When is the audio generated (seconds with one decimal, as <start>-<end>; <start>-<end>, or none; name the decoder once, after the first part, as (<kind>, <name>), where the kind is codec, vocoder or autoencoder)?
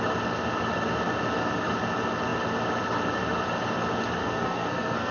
4.2-5.1 (codec, SNAC)